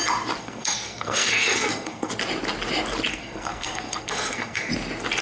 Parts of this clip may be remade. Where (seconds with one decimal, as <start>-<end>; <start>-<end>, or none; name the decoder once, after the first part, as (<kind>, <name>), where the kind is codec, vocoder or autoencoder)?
0.4-2.1 (codec, SNAC); 3.1-4.7